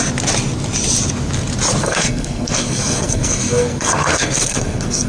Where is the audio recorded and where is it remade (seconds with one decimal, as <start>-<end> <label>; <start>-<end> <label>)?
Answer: 0.0-1.8 recorded; 1.8-5.1 remade